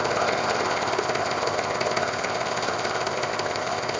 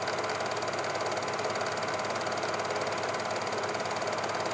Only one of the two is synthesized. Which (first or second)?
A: first